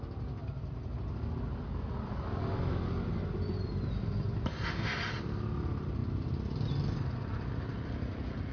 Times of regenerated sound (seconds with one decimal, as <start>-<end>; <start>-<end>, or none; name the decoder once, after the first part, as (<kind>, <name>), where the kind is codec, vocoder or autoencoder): none